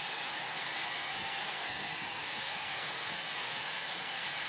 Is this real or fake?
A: fake